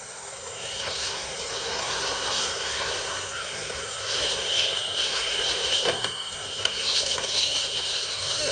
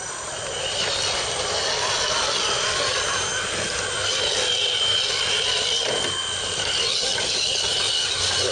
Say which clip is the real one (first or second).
second